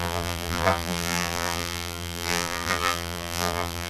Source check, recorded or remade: remade